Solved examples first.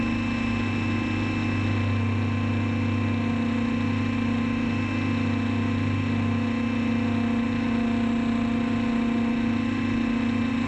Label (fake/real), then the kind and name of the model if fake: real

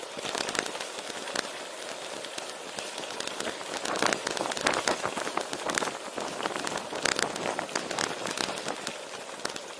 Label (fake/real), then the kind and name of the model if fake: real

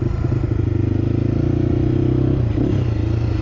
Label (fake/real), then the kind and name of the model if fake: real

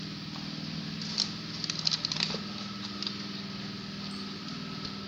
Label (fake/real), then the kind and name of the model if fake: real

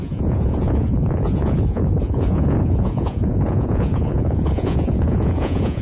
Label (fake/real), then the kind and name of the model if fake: fake, vocoder, Vocos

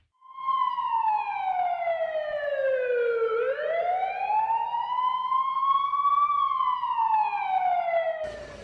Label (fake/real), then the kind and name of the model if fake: real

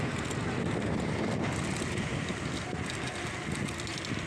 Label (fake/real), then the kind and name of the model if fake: real